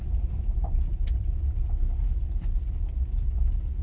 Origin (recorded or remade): recorded